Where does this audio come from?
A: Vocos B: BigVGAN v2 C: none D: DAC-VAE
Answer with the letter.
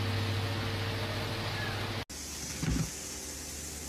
C